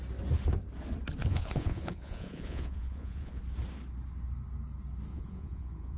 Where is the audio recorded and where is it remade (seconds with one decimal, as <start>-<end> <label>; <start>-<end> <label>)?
0.0-1.2 recorded; 1.2-3.4 remade; 3.4-5.1 recorded; 5.1-6.0 remade